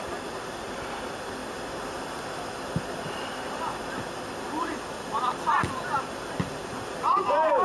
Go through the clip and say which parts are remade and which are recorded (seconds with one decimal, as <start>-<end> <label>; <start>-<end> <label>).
0.0-7.6 recorded